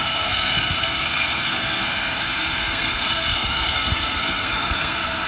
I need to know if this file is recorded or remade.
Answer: remade